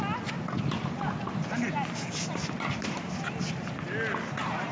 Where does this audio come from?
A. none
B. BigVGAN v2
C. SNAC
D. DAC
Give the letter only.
A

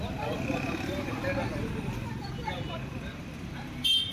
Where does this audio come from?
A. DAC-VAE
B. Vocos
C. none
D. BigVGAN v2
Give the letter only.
D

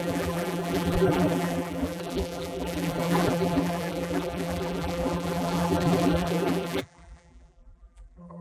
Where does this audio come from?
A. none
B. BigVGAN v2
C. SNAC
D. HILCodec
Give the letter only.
B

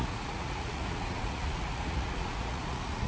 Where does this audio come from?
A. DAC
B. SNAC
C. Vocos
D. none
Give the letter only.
C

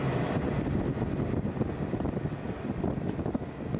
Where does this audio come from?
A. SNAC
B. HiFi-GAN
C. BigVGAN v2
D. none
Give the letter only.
D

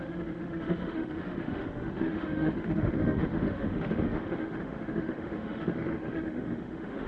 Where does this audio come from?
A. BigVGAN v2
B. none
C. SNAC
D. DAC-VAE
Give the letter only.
D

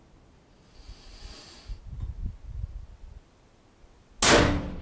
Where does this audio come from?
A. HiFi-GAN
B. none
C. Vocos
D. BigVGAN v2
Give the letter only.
B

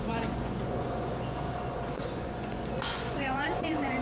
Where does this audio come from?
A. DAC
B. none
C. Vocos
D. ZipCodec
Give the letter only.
C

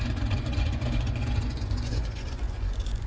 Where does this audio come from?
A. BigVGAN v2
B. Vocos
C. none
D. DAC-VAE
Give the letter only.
B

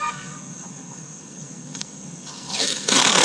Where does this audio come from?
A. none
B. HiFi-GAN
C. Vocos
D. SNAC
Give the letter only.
D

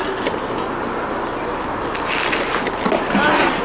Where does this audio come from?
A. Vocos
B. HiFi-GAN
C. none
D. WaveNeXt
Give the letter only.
C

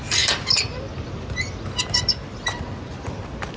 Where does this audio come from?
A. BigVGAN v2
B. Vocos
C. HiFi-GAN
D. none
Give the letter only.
D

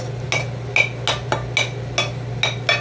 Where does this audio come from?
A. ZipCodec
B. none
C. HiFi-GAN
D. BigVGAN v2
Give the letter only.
B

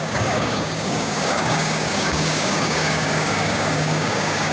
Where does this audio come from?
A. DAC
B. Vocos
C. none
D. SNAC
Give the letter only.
A